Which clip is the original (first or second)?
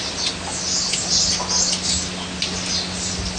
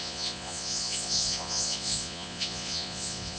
first